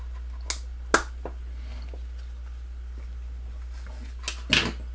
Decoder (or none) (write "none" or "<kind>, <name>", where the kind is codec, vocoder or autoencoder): none